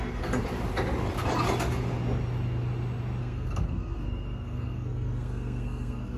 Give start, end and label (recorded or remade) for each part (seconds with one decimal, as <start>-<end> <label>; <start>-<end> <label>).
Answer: 0.0-0.4 remade; 0.4-3.2 recorded; 3.2-6.2 remade